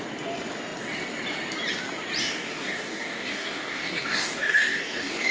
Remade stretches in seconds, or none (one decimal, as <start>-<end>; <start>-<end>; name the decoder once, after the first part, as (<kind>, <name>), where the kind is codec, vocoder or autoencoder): 2.2-5.3 (codec, DAC)